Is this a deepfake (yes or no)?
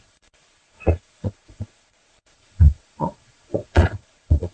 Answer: yes